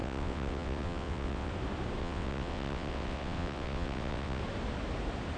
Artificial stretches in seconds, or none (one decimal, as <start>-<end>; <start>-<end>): 0.0-1.5; 2.0-4.4